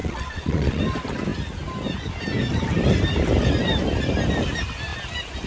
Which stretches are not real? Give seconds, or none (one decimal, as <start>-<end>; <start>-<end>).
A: 0.0-0.8